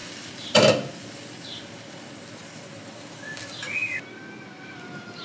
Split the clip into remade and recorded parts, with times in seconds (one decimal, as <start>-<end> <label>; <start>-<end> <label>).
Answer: 0.0-5.2 recorded